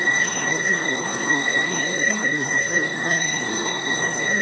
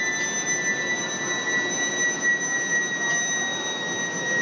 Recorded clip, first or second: second